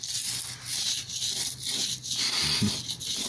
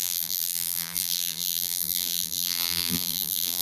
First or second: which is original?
first